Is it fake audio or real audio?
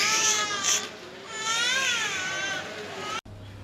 real